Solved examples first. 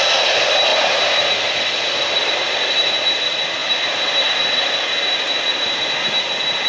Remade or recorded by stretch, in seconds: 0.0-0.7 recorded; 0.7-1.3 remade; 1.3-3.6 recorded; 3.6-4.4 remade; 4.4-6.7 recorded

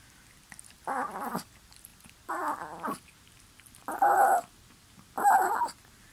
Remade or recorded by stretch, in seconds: 0.0-1.9 remade; 1.9-5.6 recorded; 5.6-6.1 remade